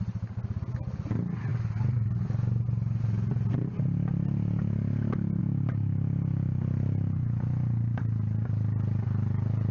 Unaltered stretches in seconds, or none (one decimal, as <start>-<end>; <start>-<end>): 0.0-9.7